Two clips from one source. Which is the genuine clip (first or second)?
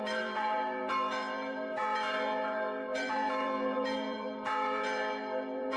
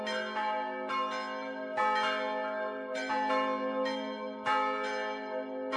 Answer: second